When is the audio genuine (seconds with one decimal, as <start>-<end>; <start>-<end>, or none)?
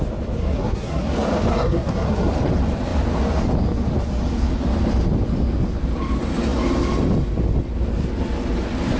0.0-0.4; 1.1-1.5; 2.3-9.0